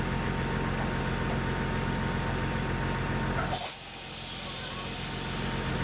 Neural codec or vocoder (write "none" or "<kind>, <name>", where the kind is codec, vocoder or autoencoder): none